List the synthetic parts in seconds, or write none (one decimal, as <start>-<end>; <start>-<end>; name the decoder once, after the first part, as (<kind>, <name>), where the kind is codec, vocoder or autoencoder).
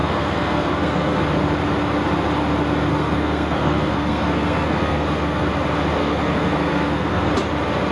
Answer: 0.0-1.2 (codec, SNAC); 2.9-5.5; 6.0-7.3